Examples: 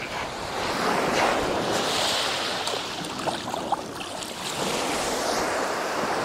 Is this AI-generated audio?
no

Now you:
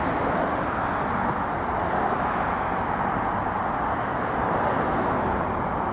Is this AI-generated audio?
no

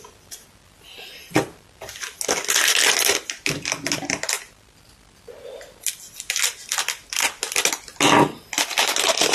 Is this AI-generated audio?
no